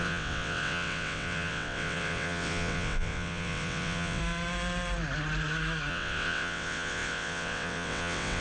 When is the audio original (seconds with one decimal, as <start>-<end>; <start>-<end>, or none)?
4.2-5.9